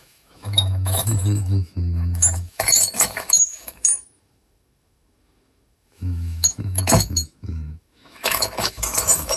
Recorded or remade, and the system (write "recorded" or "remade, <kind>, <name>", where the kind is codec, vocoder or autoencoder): remade, autoencoder, DAC-VAE